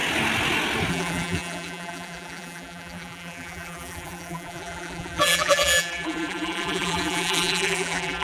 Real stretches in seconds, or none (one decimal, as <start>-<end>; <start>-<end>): 0.0-0.9